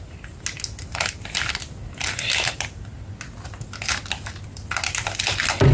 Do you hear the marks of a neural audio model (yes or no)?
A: no